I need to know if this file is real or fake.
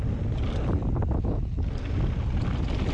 real